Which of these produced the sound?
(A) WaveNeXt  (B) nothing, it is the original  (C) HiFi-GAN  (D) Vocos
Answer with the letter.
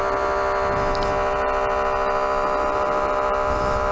B